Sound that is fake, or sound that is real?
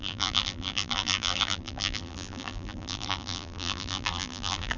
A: fake